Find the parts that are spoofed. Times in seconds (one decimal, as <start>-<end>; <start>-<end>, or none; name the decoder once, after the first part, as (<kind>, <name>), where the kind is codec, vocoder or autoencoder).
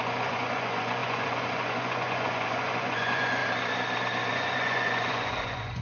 0.0-3.4 (vocoder, Vocos); 4.3-5.8